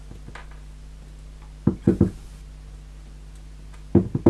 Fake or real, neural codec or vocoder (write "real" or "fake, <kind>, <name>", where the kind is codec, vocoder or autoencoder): real